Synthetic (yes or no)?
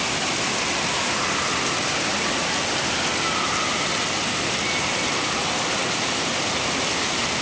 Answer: no